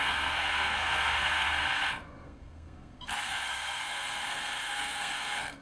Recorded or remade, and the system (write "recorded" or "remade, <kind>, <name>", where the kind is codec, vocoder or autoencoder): remade, codec, SNAC